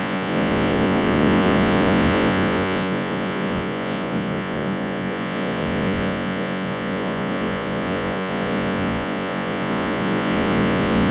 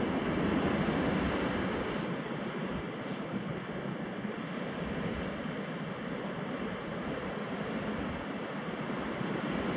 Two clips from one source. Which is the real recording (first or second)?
second